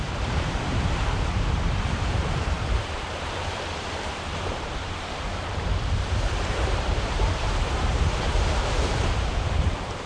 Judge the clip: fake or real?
fake